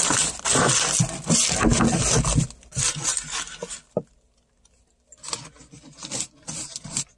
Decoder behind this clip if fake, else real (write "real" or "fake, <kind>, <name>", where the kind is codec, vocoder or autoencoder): real